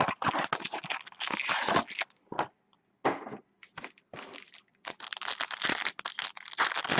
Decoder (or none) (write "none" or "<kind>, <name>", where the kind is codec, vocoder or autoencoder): none